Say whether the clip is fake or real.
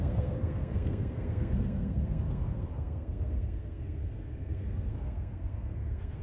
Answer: fake